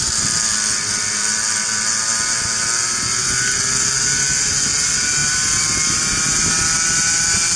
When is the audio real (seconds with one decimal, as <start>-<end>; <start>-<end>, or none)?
0.0-7.6